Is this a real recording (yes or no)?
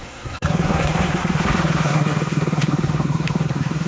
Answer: no